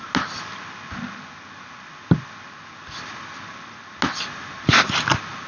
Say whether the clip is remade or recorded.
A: recorded